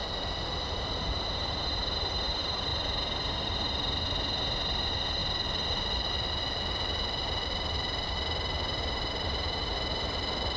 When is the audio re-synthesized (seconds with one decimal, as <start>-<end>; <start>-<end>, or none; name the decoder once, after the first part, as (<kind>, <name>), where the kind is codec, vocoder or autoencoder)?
0.7-10.6 (vocoder, BigVGAN v2)

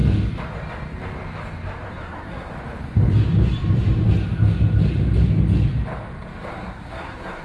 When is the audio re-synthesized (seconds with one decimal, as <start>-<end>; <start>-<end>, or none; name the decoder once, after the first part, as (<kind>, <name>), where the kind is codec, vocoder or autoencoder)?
1.9-2.5 (codec, SNAC); 6.5-7.4

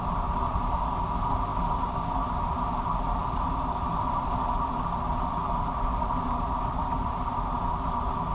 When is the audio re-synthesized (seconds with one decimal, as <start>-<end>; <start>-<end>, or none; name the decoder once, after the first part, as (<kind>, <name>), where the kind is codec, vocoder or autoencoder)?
none

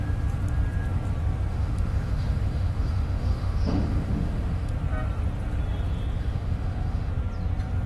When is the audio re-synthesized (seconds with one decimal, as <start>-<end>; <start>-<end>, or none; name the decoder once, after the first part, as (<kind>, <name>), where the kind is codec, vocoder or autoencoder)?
1.5-4.7 (autoencoder, DAC-VAE); 6.2-7.1

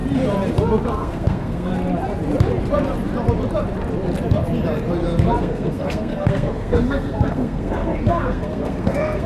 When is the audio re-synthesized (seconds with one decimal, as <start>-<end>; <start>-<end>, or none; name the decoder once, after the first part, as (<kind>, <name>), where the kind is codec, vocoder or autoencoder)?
0.9-1.7 (codec, SNAC); 5.4-9.3

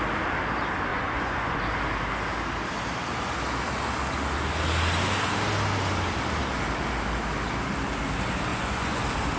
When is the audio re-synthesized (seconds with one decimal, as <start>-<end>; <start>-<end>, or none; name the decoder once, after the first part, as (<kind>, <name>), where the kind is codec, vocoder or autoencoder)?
0.9-1.6 (vocoder, Vocos); 8.5-9.0